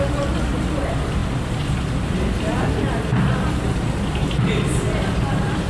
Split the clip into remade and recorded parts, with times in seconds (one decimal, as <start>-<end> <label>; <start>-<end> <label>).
0.0-5.7 recorded